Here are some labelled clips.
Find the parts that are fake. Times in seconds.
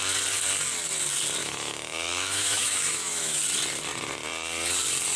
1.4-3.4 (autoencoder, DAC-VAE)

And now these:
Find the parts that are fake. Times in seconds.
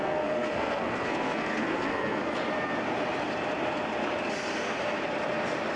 0.0-2.2 (codec, SNAC)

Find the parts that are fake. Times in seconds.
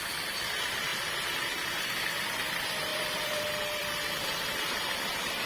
2.9-3.9 (vocoder, BigVGAN v2)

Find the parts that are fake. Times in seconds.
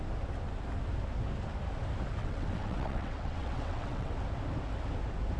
2.2-4.1 (vocoder, WaveNeXt)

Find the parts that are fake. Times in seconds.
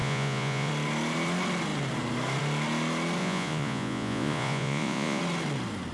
0.0-0.7 (vocoder, Vocos); 3.2-5.2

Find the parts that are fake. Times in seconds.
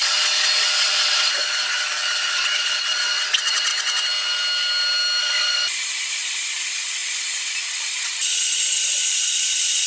0.0-3.7 (vocoder, Vocos); 5.2-9.9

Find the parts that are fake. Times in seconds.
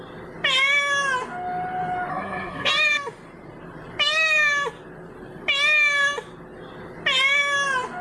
2.1-2.7 (codec, SNAC)